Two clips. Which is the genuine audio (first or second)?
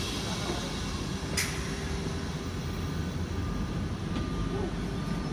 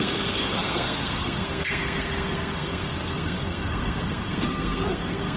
first